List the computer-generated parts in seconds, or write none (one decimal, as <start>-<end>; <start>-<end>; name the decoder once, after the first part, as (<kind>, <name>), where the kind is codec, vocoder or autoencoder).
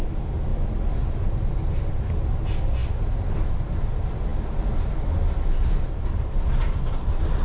none